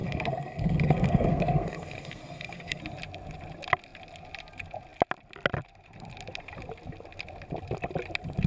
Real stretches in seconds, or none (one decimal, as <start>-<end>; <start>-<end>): 2.8-8.5